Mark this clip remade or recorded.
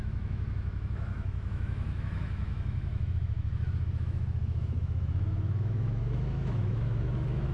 remade